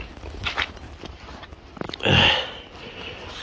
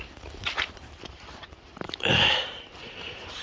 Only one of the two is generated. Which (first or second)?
second